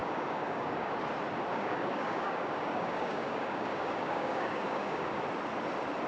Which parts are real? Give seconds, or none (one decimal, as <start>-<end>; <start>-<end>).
0.9-1.5; 5.2-6.1